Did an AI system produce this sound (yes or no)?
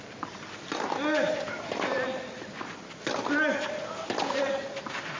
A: no